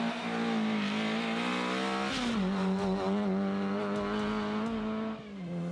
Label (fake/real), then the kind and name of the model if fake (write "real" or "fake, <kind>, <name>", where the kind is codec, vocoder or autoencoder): real